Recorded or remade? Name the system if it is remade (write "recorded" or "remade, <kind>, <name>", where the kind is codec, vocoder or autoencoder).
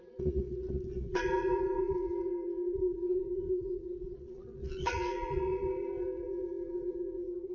remade, vocoder, Vocos